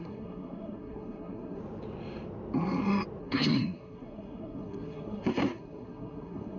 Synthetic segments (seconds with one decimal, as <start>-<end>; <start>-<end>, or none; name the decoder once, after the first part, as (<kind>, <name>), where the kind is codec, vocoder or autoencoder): 0.0-1.6 (codec, SNAC); 3.2-6.6